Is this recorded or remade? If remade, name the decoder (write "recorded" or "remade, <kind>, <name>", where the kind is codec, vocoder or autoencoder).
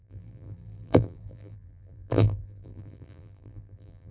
remade, vocoder, BigVGAN v2